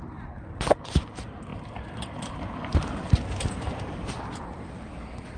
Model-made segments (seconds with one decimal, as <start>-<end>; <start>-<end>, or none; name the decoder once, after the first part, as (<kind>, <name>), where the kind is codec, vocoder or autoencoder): 1.5-4.7 (vocoder, BigVGAN v2)